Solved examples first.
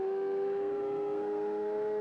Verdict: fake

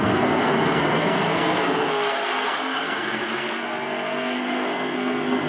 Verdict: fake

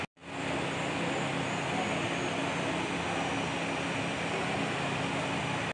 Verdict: real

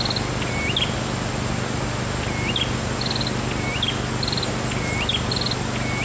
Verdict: real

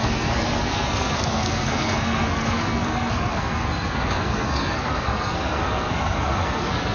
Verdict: fake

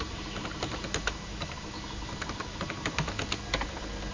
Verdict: real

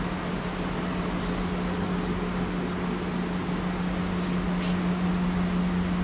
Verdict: real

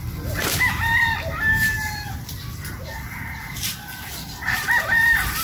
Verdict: real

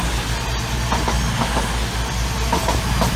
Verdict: real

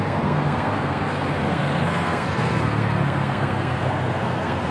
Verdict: fake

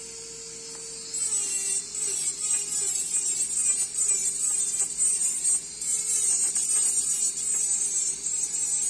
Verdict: real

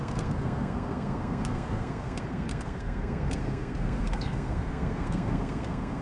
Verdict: fake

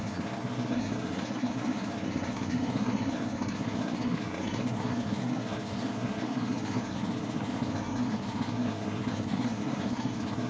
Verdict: fake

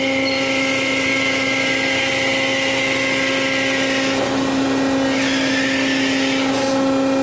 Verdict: real